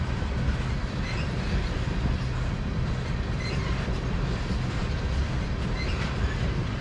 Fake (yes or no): no